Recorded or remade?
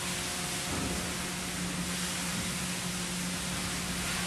recorded